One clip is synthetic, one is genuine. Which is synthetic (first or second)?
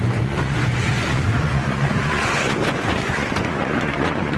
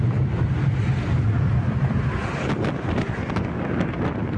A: first